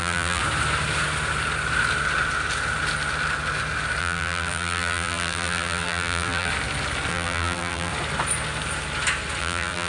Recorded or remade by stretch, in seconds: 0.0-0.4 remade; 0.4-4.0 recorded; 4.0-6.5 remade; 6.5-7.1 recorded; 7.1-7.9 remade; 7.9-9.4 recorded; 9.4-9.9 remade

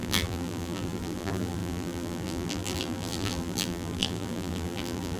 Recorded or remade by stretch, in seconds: 0.0-5.2 remade

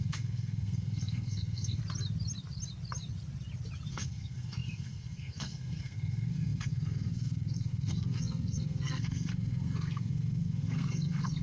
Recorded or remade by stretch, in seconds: 0.0-1.8 remade; 1.8-3.9 recorded; 3.9-11.4 remade

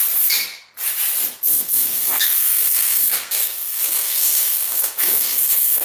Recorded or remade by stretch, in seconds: 0.0-1.5 recorded; 1.5-5.8 remade